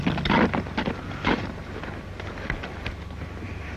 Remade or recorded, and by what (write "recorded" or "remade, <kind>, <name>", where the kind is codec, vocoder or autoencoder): recorded